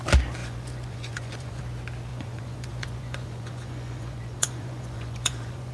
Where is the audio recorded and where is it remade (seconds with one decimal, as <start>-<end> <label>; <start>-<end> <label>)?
0.0-0.4 recorded; 0.4-1.6 remade; 1.6-2.1 recorded; 2.1-5.7 remade